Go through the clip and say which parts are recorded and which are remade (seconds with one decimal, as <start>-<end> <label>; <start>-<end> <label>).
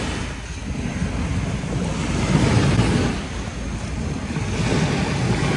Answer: 0.0-5.6 recorded